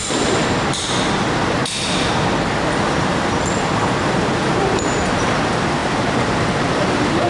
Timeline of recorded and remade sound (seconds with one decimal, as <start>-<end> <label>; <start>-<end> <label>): 0.0-1.6 remade; 1.6-2.8 recorded; 2.8-7.3 remade